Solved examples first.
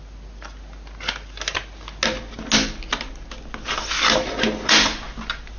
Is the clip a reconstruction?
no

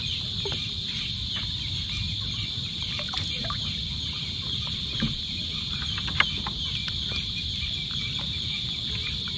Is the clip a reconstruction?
no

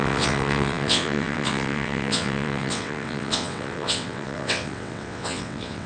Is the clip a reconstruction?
yes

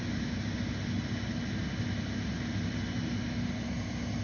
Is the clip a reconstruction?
no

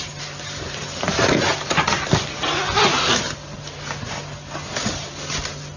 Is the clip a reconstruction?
no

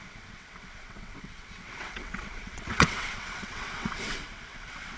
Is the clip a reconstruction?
yes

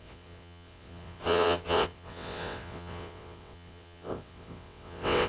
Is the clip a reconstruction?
yes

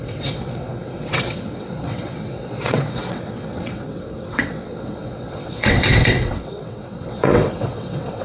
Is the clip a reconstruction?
yes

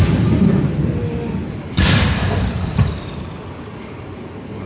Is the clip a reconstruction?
no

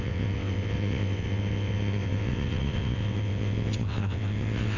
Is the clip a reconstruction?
yes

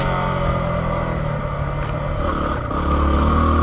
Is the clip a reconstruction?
no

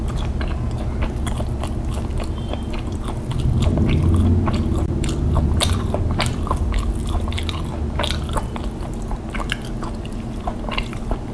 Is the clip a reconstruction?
no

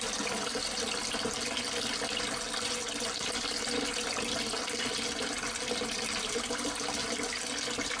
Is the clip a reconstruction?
no